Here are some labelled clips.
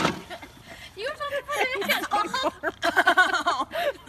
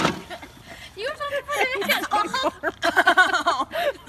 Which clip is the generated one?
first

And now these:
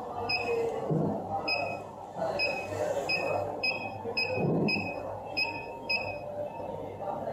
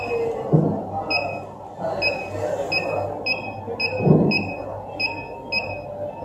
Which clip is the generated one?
first